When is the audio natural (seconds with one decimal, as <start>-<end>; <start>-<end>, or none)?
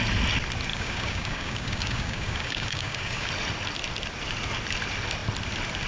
0.0-0.7; 3.3-5.9